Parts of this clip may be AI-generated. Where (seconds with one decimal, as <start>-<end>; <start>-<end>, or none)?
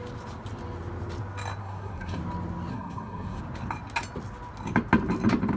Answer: 1.6-2.2; 2.7-3.4